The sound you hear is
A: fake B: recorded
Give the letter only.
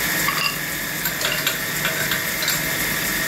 B